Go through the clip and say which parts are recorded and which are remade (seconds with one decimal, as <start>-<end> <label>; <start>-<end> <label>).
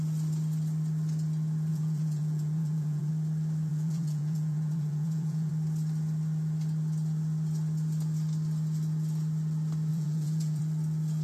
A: 0.0-1.7 recorded; 1.7-3.1 remade; 3.1-3.7 recorded; 3.7-5.5 remade; 5.5-9.9 recorded; 9.9-10.6 remade; 10.6-11.2 recorded